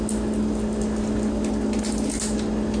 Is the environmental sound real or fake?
real